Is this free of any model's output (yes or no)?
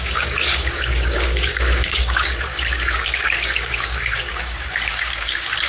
no